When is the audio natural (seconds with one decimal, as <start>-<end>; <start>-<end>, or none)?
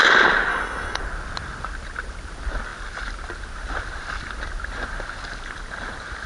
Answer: 0.0-0.5; 1.0-6.3